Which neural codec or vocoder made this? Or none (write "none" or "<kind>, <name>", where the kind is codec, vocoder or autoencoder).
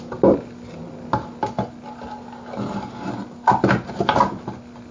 none